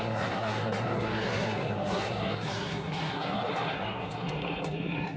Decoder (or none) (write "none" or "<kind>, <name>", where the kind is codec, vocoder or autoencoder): codec, SNAC